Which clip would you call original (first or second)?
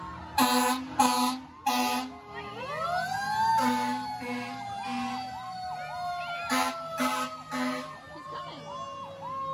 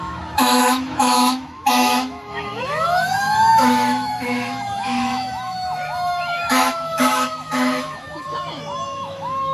first